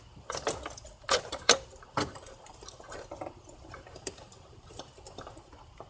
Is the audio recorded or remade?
remade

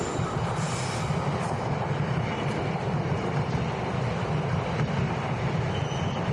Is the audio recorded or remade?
recorded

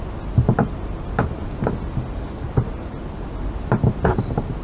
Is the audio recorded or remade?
recorded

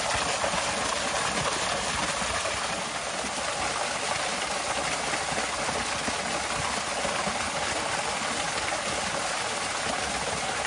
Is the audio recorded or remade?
recorded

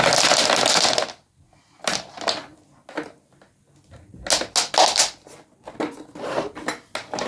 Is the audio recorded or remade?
recorded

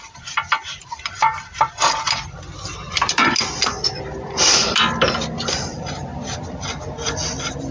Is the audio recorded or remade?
remade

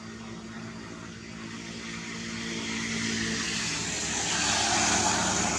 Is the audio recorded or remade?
recorded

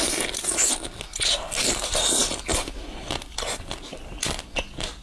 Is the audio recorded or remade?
recorded